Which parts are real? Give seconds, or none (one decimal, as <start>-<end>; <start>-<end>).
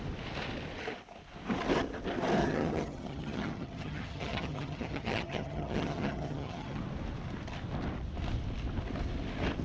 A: 0.0-2.4; 6.8-9.6